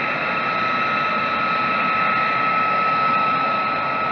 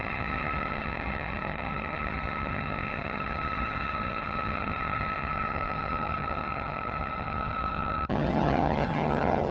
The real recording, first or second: first